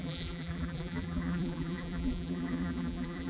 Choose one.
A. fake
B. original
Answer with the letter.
A